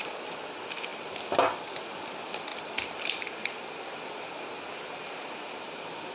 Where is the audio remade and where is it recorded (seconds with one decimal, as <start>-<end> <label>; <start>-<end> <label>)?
0.0-6.1 recorded